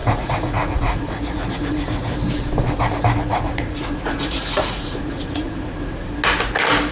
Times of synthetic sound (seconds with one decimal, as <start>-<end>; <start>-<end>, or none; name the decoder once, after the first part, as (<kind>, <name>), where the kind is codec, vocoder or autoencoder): 0.0-2.1 (vocoder, Vocos); 3.3-6.1